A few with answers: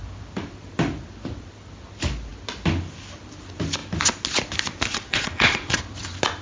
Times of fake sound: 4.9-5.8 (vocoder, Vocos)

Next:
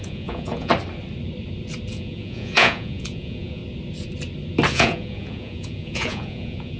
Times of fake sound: 0.0-0.7 (vocoder, Vocos); 1.9-3.6; 4.7-6.8